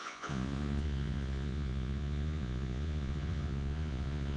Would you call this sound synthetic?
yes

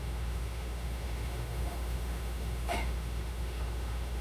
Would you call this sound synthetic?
yes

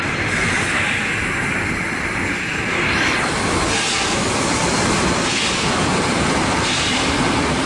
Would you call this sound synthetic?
yes